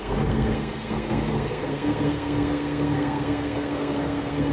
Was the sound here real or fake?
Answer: fake